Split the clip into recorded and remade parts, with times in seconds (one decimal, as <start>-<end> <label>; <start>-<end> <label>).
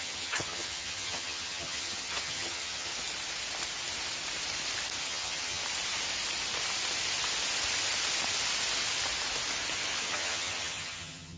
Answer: 0.0-2.9 remade; 2.9-5.0 recorded; 5.0-5.6 remade; 5.6-10.0 recorded; 10.0-11.4 remade